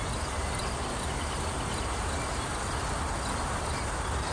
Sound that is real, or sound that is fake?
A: real